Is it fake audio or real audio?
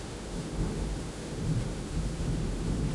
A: fake